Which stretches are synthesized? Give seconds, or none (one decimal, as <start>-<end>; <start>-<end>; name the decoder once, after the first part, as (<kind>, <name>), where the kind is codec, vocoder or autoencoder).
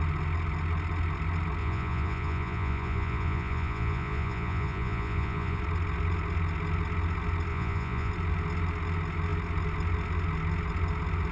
1.6-5.6 (vocoder, Vocos); 7.5-8.1